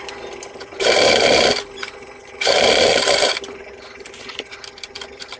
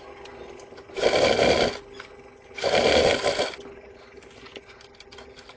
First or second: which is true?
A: second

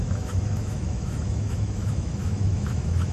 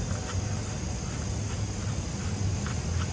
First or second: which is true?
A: second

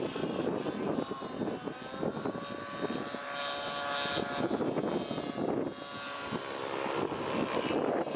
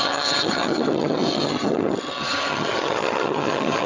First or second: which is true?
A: first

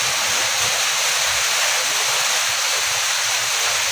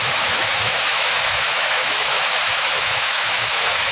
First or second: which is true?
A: first